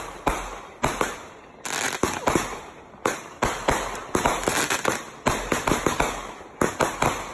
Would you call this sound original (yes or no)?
yes